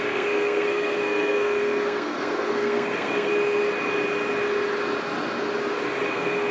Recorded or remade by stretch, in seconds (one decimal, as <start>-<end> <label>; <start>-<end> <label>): 0.0-3.3 remade; 3.3-6.1 recorded; 6.1-6.5 remade